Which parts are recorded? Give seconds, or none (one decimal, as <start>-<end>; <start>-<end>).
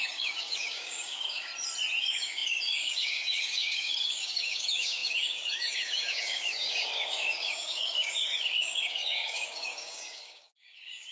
1.5-2.0